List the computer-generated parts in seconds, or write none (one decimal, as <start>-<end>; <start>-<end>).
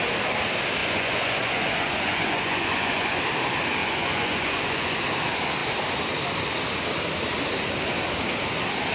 0.8-3.2; 3.8-5.0